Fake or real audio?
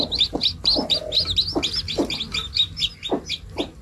real